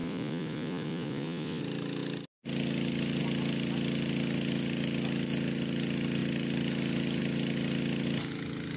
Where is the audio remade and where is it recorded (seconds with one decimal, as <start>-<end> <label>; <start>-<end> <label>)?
0.0-1.6 remade; 1.6-8.8 recorded